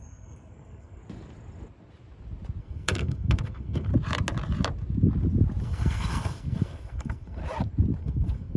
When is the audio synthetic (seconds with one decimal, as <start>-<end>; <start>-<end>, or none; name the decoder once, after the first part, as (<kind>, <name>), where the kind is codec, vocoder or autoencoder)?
0.0-1.0 (codec, SNAC); 2.6-3.9; 5.6-7.4; 8.0-8.6